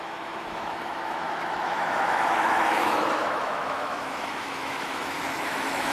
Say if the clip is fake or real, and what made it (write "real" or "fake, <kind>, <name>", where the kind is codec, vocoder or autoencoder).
fake, autoencoder, DAC-VAE